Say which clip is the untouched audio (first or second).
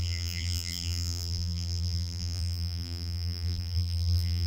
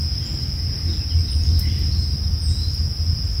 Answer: second